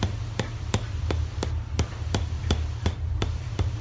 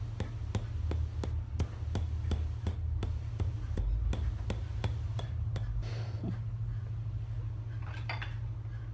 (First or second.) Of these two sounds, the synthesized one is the first